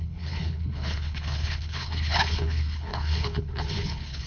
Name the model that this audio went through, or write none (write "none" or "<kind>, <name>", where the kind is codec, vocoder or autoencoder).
codec, HILCodec